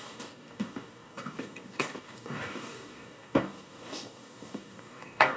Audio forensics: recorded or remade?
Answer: remade